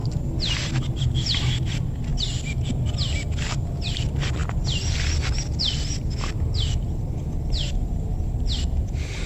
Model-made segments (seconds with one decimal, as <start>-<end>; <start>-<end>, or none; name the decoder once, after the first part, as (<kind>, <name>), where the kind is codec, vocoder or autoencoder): none